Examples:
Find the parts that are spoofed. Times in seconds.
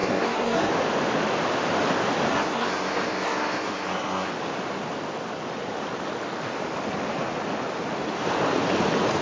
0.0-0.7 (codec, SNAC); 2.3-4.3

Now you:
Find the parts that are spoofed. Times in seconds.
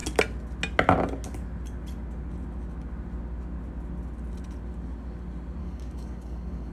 5.6-6.7 (codec, DAC)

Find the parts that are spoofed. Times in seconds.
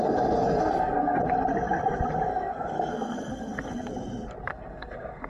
0.6-1.2 (codec, SNAC); 2.3-3.9; 4.5-5.3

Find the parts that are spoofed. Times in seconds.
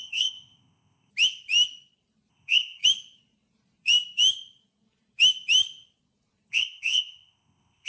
0.0-1.1 (codec, ZipCodec); 2.3-2.8; 6.5-7.9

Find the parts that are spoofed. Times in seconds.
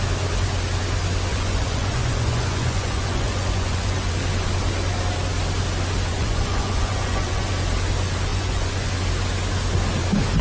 1.3-4.1 (vocoder, Vocos); 6.1-7.5; 8.3-8.9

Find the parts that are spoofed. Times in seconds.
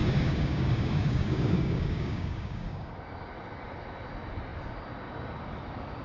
0.0-2.9 (codec, DAC)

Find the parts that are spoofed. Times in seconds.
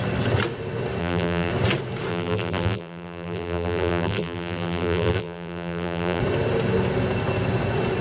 1.0-1.5 (vocoder, BigVGAN v2); 2.1-6.2